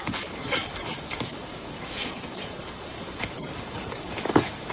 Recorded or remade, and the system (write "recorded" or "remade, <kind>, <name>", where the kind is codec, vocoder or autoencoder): remade, codec, DAC